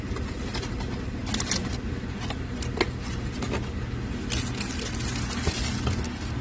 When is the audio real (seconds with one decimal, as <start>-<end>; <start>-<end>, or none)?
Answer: 0.0-6.4